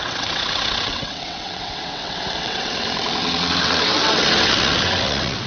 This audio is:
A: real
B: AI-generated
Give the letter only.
B